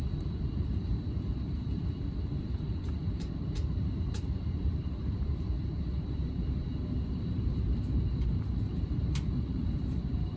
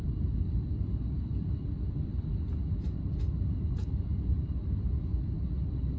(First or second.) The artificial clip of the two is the first